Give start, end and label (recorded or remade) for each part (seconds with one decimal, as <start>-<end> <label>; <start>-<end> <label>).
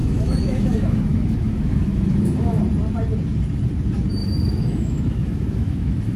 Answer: 0.0-2.6 remade; 2.6-4.2 recorded; 4.2-6.2 remade